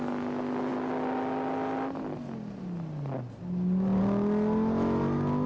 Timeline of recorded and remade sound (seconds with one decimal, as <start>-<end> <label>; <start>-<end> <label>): 0.0-5.5 recorded